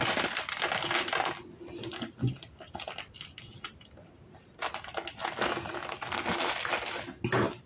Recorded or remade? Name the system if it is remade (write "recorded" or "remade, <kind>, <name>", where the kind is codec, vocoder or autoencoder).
recorded